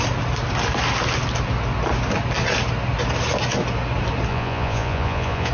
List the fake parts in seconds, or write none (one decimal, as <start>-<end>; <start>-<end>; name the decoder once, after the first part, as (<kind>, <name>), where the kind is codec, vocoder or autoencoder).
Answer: 4.3-5.5 (vocoder, Vocos)